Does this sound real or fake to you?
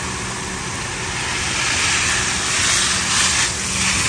real